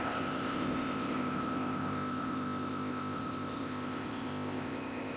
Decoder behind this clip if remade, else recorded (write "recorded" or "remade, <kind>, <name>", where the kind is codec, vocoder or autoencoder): remade, codec, ZipCodec